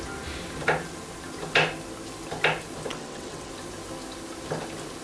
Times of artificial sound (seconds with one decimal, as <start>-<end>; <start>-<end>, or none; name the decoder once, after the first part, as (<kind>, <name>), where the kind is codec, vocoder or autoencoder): 2.9-3.5 (vocoder, WaveNeXt)